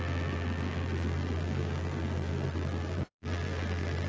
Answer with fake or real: fake